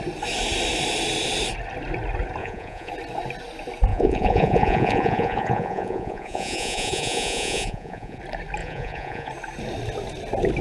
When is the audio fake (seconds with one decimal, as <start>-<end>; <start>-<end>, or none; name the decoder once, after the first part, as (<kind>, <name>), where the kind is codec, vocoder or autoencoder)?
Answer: 2.4-2.9 (vocoder, Vocos); 3.9-8.2; 8.6-9.3